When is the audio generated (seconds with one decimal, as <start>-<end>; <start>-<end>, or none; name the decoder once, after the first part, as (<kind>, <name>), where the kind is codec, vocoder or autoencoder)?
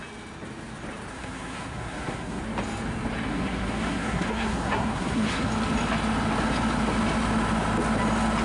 1.1-2.4 (codec, SNAC); 3.3-5.5